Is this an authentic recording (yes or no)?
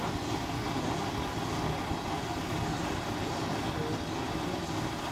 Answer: yes